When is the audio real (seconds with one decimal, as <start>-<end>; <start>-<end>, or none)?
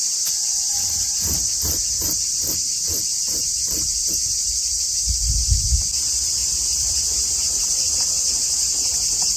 0.0-6.4; 7.9-9.4